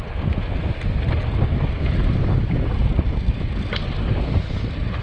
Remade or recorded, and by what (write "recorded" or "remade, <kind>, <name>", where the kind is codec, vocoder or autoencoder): recorded